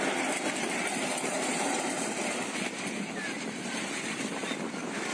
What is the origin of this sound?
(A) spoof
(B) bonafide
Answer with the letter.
A